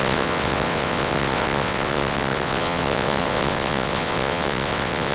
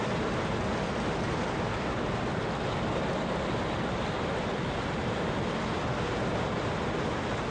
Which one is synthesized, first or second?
first